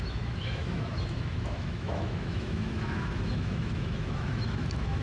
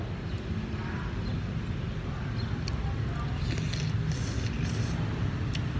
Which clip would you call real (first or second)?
second